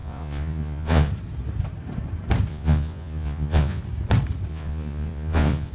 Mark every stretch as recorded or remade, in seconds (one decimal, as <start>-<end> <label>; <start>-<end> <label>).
0.0-1.1 remade; 1.1-2.5 recorded; 2.5-3.8 remade; 3.8-4.5 recorded; 4.5-5.7 remade